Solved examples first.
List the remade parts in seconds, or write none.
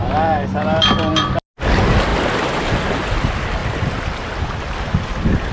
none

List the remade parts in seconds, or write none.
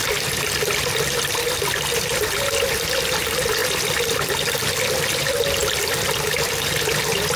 none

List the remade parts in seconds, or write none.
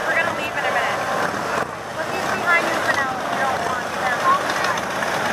none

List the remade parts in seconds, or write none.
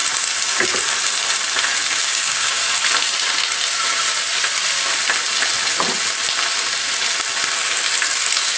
2.0-2.6 (codec, DAC)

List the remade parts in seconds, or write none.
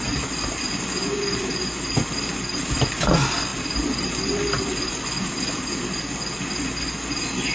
none